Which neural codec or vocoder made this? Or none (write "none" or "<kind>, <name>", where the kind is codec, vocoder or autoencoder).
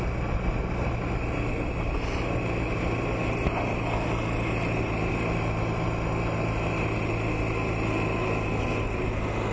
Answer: none